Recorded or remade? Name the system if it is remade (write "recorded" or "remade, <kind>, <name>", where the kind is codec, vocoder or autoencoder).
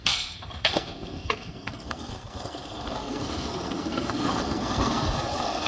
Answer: remade, codec, SNAC